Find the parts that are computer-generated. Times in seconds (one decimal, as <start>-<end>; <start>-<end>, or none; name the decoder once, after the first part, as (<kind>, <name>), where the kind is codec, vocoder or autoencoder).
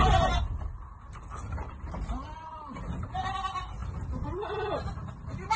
none